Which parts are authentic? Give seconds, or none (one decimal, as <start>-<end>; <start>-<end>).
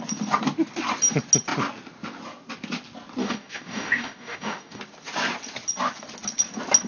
0.0-3.2; 4.8-6.9